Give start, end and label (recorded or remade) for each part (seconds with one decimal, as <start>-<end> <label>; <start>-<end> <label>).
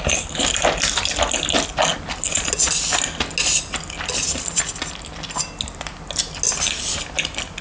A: 0.0-7.6 recorded